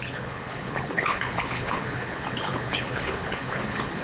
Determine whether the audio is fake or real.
fake